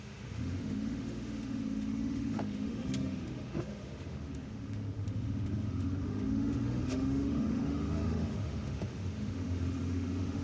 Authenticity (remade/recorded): remade